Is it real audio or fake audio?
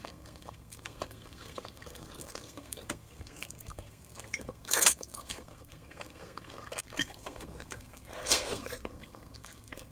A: fake